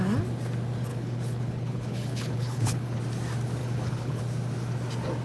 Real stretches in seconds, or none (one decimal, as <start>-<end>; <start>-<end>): 0.0-0.9; 3.0-3.6; 4.2-5.2